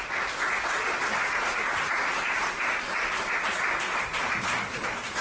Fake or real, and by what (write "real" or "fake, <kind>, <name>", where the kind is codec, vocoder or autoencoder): real